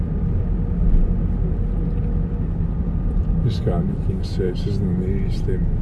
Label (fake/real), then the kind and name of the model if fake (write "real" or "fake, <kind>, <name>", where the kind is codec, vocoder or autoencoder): real